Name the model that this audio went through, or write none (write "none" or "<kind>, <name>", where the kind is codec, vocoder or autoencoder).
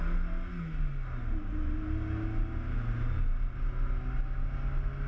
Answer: none